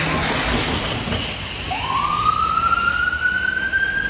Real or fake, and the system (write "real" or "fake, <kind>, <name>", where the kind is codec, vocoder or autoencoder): real